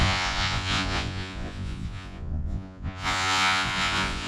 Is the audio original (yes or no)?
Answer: no